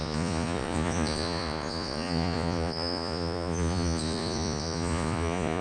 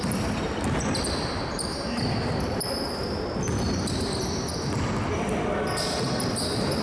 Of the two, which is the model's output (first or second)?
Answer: first